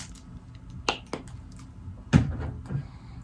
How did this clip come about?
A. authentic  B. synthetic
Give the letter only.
A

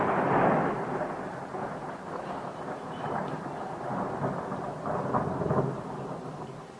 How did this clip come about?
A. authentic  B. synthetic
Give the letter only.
A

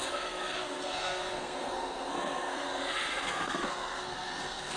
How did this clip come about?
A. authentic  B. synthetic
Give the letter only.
B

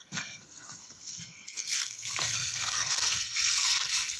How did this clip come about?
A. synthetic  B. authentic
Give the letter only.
A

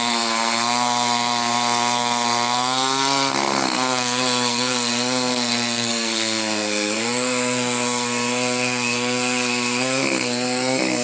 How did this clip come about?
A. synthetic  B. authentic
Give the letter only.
A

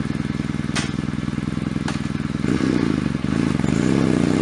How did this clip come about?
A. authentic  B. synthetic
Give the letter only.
A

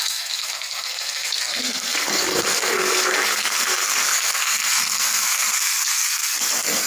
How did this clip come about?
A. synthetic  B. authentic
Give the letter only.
A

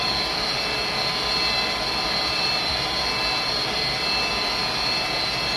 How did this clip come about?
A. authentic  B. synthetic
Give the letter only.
A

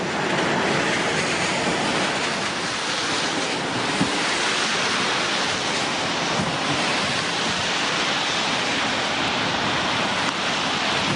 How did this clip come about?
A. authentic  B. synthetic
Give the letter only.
A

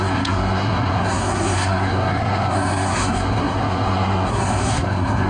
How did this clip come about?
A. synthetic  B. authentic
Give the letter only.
A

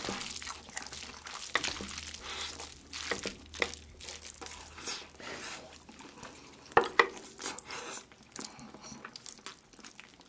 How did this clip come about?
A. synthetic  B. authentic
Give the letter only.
B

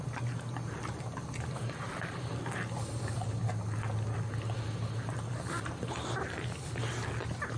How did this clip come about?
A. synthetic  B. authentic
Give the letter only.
B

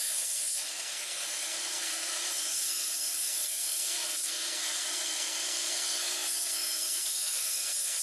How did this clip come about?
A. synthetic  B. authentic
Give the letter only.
A